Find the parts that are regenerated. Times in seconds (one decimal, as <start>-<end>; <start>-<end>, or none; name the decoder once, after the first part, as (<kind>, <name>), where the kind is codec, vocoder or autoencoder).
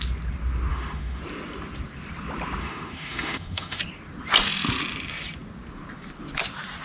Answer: 0.7-1.2 (autoencoder, DAC-VAE); 2.6-3.8